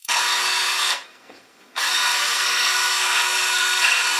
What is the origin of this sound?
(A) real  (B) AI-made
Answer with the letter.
B